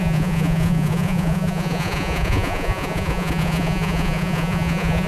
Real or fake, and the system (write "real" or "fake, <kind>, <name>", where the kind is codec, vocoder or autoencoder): fake, vocoder, Vocos